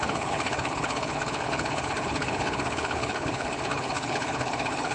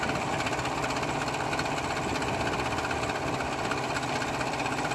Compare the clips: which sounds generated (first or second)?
first